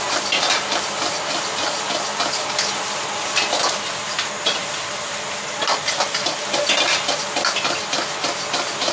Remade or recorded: recorded